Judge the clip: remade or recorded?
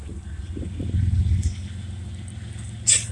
recorded